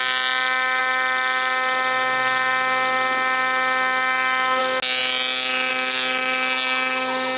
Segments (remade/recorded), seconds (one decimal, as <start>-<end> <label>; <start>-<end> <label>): 0.0-7.4 recorded